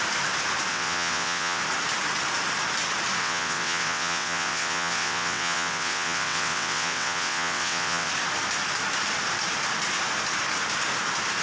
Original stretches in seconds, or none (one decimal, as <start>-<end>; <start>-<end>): 0.0-0.7; 1.6-3.2; 8.1-11.4